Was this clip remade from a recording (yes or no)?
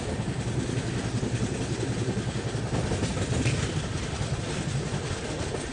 no